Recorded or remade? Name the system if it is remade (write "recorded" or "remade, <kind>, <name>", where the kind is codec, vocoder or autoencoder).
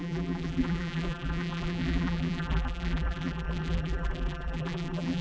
remade, vocoder, BigVGAN v2